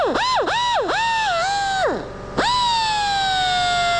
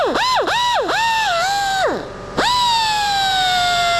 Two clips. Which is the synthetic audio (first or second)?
second